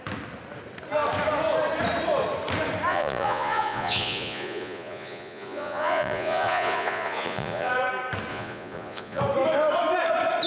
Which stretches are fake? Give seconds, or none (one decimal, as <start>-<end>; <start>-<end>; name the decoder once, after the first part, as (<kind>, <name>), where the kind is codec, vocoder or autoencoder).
2.9-7.7 (vocoder, Vocos); 8.3-9.2